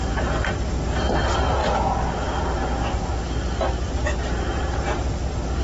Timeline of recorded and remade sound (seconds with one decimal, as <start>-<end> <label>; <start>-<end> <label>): 0.0-1.1 remade; 1.1-5.6 recorded